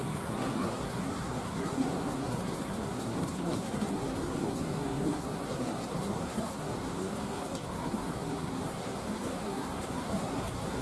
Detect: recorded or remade remade